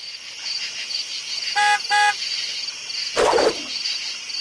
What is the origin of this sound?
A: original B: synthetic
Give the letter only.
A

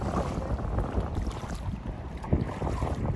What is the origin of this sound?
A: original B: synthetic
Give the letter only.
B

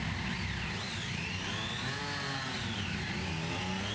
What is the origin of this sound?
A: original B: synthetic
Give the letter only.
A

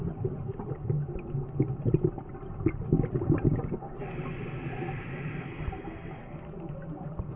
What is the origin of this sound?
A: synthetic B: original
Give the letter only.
B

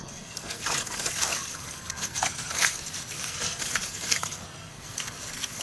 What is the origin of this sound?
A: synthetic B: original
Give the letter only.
A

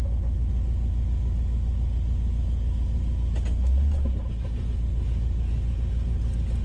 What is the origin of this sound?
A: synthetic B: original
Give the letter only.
B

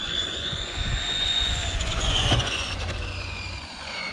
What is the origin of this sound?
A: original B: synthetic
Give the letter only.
B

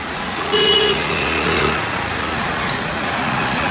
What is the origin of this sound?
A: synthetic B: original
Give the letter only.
A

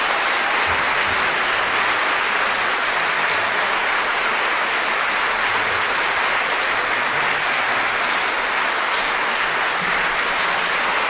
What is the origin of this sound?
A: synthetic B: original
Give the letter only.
B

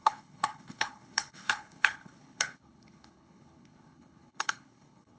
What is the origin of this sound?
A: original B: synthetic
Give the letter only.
B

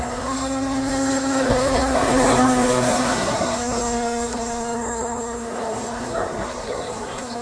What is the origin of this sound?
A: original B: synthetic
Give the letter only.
B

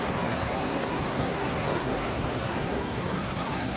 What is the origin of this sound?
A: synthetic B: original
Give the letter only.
A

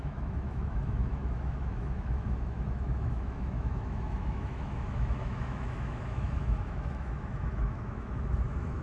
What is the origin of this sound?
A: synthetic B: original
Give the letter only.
A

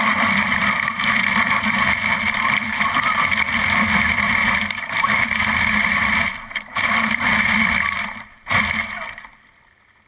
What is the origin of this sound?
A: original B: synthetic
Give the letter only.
B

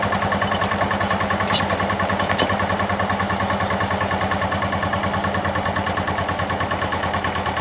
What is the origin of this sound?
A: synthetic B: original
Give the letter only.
B